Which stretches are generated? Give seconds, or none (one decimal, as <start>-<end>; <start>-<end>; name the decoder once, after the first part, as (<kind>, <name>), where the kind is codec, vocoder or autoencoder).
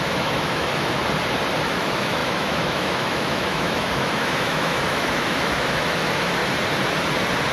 0.0-1.0 (autoencoder, DAC-VAE); 1.8-6.4